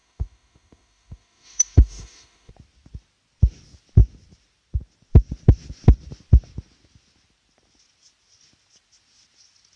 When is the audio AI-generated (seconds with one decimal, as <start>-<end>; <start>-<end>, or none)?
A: 0.0-2.5